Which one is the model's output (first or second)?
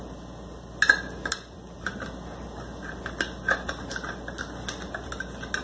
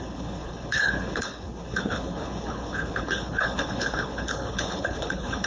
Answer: second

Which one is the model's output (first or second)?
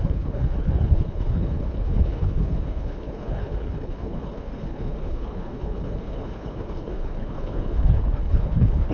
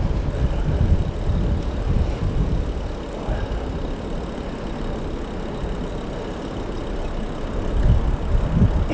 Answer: first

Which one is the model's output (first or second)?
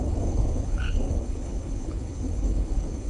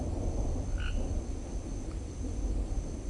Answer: first